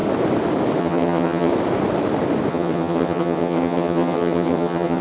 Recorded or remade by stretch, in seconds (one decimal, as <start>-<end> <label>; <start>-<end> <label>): 0.0-0.8 recorded; 0.8-1.5 remade; 1.5-2.5 recorded; 2.5-5.0 remade